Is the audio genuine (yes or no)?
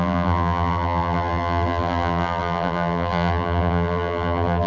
no